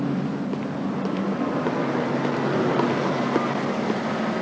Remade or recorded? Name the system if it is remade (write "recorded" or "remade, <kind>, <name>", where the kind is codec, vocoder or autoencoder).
recorded